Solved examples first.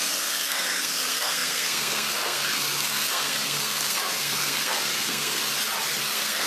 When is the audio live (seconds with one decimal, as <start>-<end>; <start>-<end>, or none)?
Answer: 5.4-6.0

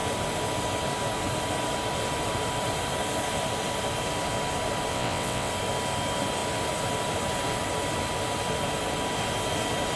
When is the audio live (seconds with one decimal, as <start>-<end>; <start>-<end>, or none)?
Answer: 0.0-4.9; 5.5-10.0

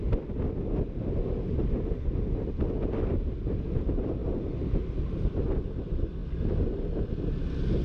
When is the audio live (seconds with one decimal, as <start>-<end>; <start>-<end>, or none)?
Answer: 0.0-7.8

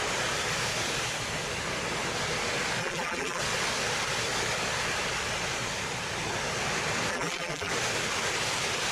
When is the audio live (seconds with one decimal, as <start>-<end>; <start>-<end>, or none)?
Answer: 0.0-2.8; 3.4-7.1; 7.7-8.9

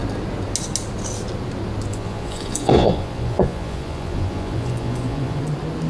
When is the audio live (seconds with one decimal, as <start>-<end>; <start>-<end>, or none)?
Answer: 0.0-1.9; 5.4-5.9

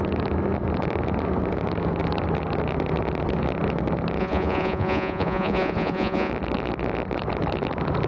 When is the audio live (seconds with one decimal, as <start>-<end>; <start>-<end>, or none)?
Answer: 0.0-4.2; 6.3-8.1